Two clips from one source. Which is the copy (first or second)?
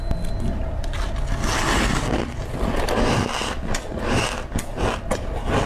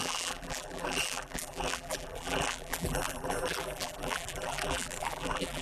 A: second